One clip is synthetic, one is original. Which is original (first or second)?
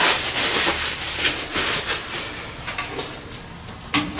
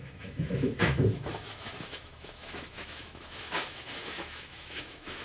first